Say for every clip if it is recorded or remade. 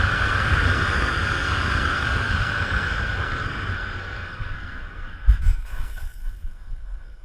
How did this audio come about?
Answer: remade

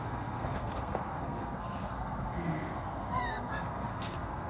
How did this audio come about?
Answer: remade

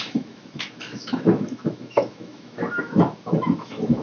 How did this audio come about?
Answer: remade